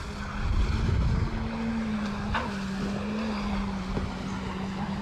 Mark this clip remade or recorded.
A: recorded